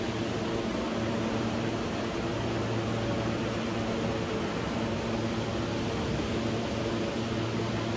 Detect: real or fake real